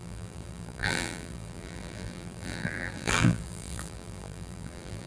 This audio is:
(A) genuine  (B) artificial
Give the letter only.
B